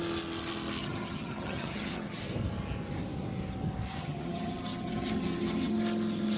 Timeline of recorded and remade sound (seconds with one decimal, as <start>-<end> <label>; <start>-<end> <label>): 0.0-0.8 recorded; 0.8-2.2 remade; 2.2-3.9 recorded; 3.9-5.7 remade; 5.7-6.4 recorded